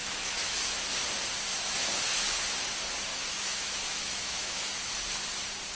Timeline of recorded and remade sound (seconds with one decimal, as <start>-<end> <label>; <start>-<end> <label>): 0.0-0.9 remade; 0.9-1.5 recorded; 1.5-2.5 remade; 2.5-3.1 recorded; 3.1-4.9 remade; 4.9-5.7 recorded